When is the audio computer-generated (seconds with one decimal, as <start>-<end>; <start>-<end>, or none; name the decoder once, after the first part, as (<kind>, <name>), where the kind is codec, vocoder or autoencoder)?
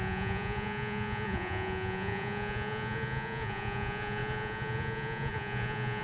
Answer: 0.0-6.0 (vocoder, Vocos)